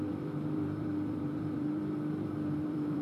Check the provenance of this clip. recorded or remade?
remade